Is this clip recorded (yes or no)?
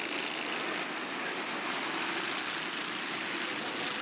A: yes